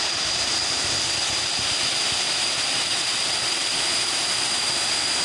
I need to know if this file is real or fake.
real